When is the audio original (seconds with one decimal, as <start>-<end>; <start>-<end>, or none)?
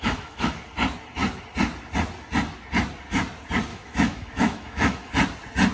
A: 0.6-3.7; 5.1-5.7